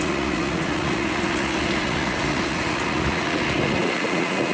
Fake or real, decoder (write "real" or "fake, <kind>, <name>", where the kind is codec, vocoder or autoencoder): fake, vocoder, Vocos